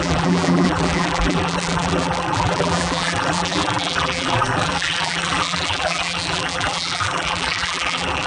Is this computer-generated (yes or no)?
yes